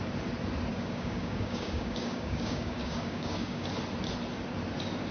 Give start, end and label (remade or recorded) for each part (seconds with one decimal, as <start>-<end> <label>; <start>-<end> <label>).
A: 0.0-0.7 recorded; 0.7-3.7 remade; 3.7-5.1 recorded